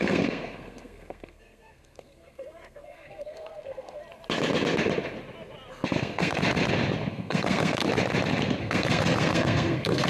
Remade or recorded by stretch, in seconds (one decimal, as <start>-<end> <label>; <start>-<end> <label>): 0.0-4.0 remade; 4.0-6.0 recorded; 6.0-6.4 remade; 6.4-7.1 recorded; 7.1-7.8 remade; 7.8-8.6 recorded; 8.6-10.1 remade